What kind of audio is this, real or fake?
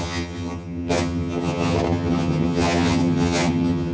fake